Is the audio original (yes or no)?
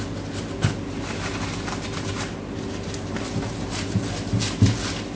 yes